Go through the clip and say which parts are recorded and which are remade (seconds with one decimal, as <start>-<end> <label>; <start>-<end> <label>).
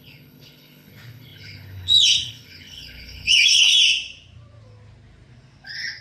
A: 0.0-3.7 remade; 3.7-6.0 recorded